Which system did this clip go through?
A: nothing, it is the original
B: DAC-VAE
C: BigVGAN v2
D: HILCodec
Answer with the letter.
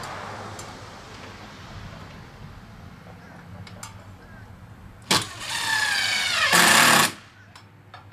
A